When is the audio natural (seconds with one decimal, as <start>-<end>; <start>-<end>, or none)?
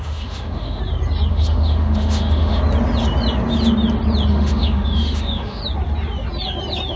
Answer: 0.8-1.3; 2.6-4.3; 5.6-7.0